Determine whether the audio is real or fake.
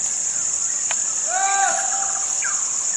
real